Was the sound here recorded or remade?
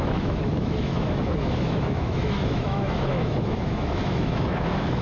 remade